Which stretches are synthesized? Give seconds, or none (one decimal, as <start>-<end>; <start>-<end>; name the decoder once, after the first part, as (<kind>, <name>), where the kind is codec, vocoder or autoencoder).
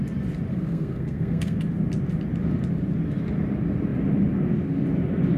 0.5-1.6 (codec, SNAC)